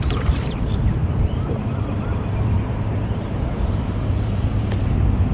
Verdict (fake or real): fake